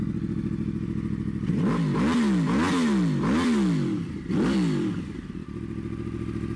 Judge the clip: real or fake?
real